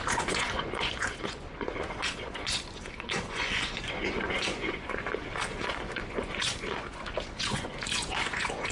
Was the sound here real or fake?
fake